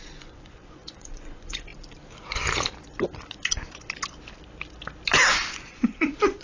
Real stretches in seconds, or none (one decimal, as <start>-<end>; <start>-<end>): 1.7-5.5